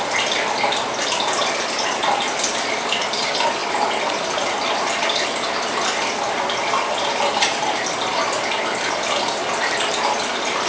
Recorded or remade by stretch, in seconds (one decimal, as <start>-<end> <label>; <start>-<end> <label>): 0.0-10.7 recorded